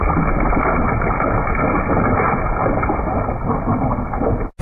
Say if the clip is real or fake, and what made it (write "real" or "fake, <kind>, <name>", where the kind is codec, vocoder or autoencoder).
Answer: real